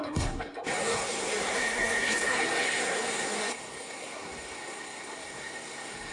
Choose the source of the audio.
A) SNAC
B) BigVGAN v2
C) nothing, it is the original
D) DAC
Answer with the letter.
A